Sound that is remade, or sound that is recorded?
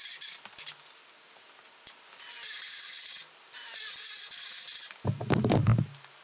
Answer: recorded